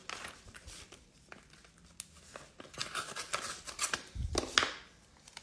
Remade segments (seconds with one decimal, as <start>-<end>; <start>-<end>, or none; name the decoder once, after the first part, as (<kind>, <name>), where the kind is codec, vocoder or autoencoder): none